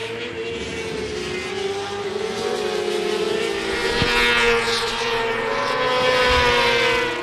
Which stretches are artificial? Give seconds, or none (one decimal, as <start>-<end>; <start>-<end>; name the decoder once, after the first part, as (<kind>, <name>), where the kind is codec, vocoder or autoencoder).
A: none